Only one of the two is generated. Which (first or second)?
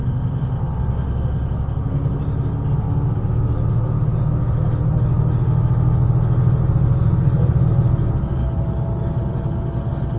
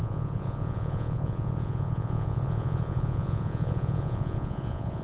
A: second